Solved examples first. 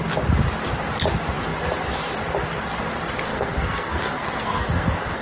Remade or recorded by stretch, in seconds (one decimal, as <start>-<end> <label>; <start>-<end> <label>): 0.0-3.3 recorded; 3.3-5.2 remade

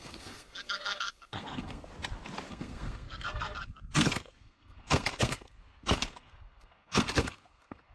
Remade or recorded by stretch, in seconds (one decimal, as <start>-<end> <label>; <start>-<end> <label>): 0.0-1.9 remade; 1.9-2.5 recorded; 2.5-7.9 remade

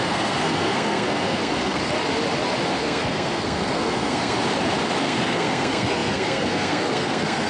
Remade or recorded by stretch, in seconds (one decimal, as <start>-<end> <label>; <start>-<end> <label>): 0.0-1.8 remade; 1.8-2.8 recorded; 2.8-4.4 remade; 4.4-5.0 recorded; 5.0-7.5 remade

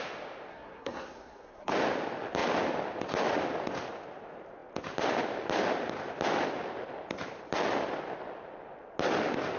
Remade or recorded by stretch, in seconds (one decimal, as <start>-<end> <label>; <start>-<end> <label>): 0.0-0.5 recorded; 0.5-1.7 remade; 1.7-9.6 recorded

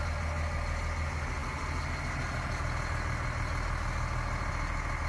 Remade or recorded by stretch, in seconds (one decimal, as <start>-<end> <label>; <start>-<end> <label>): 0.0-5.1 recorded

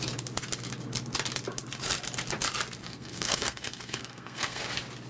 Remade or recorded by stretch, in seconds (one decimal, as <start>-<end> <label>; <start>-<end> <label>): 0.0-2.8 recorded; 2.8-4.6 remade; 4.6-5.1 recorded

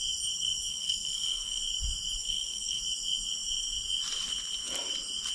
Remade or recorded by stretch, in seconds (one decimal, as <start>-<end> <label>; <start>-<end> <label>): 0.0-0.7 recorded; 0.7-1.6 remade; 1.6-2.2 recorded; 2.2-2.8 remade; 2.8-5.3 recorded

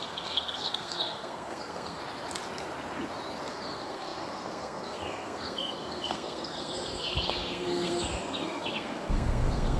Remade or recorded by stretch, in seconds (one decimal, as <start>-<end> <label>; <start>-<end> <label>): 0.0-2.0 remade; 2.0-3.5 recorded; 3.5-9.8 remade